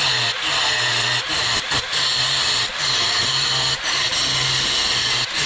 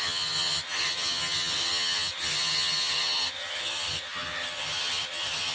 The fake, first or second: second